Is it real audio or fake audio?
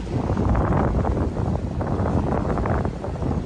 real